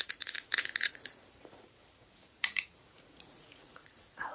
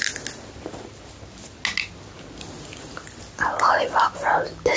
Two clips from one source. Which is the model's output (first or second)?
first